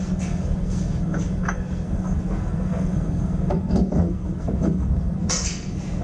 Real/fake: fake